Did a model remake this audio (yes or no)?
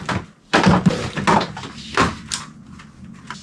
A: no